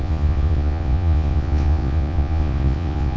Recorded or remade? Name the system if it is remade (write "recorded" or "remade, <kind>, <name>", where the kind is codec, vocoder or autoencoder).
remade, vocoder, Vocos